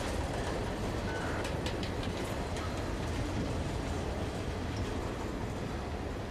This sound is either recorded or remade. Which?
recorded